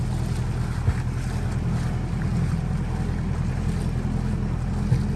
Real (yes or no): yes